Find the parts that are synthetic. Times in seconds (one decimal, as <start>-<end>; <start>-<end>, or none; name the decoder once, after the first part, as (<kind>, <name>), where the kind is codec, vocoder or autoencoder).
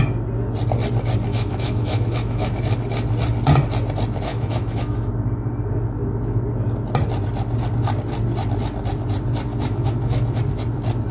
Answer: 1.3-2.6 (autoencoder, DAC-VAE); 4.3-5.1; 9.5-10.4